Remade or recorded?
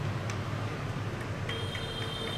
recorded